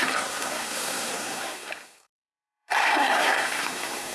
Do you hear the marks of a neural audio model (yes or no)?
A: yes